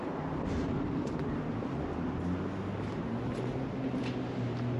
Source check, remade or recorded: recorded